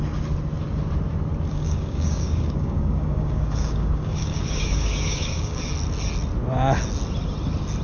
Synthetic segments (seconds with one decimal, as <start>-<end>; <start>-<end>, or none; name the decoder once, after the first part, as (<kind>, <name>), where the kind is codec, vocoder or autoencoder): 1.5-5.6 (codec, DAC)